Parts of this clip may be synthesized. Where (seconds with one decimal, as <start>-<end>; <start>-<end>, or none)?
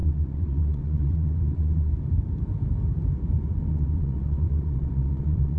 0.0-1.9; 3.7-5.6